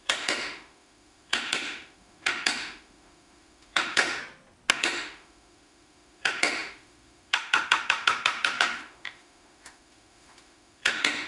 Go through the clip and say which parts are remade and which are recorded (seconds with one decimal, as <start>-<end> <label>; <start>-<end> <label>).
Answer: 0.0-4.2 remade; 4.2-4.7 recorded; 4.7-11.3 remade